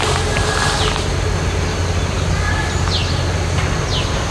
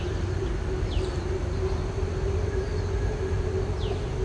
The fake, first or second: second